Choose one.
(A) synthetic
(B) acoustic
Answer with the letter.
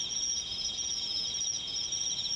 A